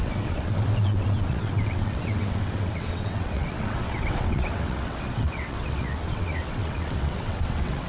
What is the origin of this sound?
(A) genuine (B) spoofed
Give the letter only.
B